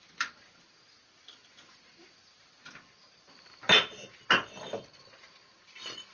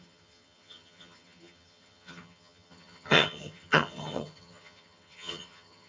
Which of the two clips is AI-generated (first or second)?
second